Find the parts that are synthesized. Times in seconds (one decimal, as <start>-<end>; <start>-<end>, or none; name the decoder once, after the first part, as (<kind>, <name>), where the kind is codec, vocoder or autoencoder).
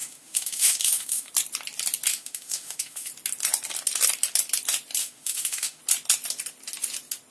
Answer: 0.0-1.3 (autoencoder, DAC-VAE); 2.1-3.1; 5.0-5.8